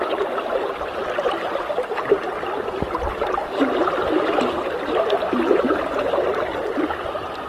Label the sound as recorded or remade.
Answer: recorded